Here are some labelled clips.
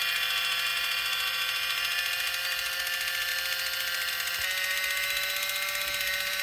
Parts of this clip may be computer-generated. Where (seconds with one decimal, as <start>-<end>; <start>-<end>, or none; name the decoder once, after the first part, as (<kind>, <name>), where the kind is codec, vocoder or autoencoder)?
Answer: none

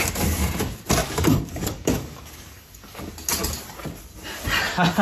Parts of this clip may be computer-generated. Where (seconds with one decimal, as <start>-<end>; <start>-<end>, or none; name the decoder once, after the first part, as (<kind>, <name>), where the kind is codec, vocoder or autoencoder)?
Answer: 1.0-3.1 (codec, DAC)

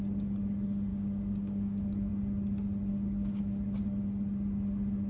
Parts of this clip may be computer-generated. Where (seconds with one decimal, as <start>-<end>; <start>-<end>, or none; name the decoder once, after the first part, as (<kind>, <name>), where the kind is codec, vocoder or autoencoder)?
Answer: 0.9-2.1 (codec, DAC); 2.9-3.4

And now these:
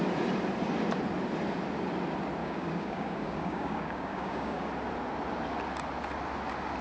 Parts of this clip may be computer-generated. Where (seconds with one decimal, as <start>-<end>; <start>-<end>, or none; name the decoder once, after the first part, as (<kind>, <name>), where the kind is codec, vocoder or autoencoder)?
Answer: 2.4-4.7 (codec, DAC)

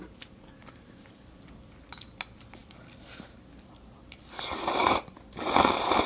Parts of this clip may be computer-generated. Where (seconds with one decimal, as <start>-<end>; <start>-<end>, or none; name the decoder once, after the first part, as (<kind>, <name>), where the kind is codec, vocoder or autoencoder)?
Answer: none

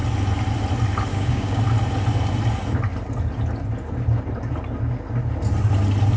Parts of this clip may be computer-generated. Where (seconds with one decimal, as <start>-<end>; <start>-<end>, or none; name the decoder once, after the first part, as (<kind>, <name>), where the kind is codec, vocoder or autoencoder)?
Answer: 1.1-1.6 (codec, DAC)